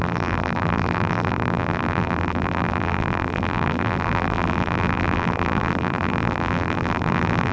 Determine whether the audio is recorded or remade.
remade